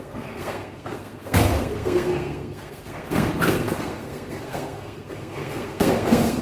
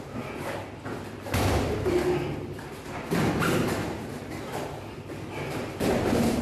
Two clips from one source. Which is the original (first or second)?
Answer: second